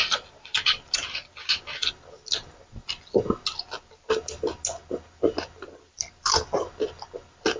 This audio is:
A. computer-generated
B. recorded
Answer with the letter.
B